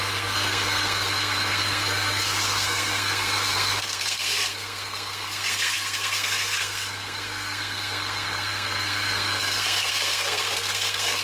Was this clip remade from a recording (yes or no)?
yes